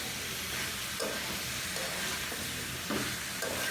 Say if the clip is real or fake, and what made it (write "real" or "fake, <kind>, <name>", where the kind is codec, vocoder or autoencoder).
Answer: real